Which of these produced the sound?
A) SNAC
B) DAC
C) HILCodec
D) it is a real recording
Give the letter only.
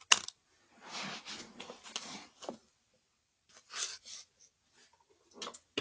D